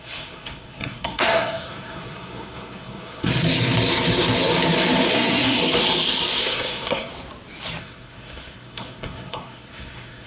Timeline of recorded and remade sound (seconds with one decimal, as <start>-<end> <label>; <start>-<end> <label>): 0.0-3.3 remade; 3.3-5.1 recorded; 5.1-5.6 remade; 5.6-6.4 recorded; 6.4-7.1 remade; 7.1-7.8 recorded; 7.8-10.3 remade